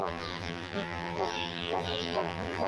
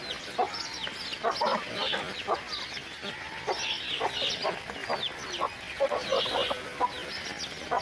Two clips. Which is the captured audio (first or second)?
second